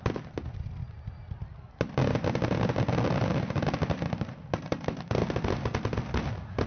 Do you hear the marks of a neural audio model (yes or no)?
no